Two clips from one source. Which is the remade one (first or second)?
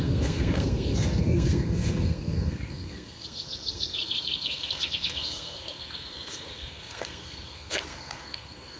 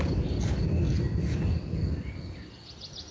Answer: first